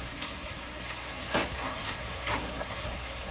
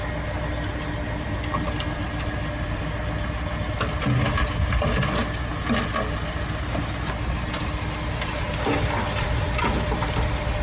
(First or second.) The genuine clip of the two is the second